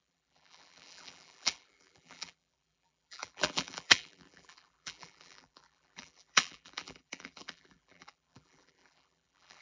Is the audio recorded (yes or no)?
no